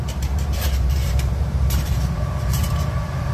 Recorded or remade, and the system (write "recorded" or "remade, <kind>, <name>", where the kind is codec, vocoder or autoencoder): remade, vocoder, BigVGAN v2